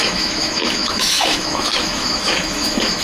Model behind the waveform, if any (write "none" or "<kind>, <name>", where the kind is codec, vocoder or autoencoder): autoencoder, DAC-VAE